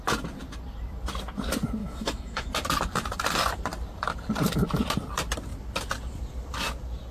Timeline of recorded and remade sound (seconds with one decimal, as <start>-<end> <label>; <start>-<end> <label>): 0.0-1.8 recorded; 1.8-2.5 remade; 2.5-7.1 recorded